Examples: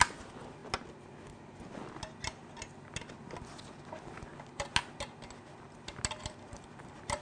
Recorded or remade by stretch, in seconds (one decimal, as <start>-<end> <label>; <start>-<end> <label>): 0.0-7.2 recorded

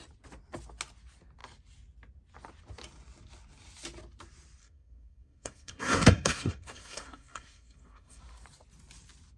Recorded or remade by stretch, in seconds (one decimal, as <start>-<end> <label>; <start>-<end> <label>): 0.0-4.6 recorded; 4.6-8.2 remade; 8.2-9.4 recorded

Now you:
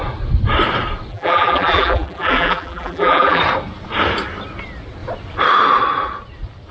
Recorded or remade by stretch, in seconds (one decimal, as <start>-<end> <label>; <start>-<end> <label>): 0.0-1.1 recorded; 1.1-3.4 remade; 3.4-6.7 recorded

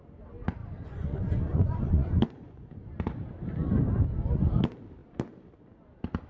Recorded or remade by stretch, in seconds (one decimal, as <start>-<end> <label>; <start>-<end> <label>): 0.0-0.6 recorded; 0.6-2.8 remade; 2.8-6.3 recorded